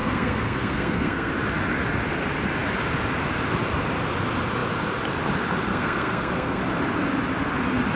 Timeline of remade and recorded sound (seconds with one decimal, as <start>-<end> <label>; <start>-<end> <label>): 0.0-1.3 remade; 1.3-5.7 recorded; 5.7-6.6 remade; 6.6-8.0 recorded